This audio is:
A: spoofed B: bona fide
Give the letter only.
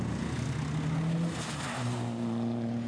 B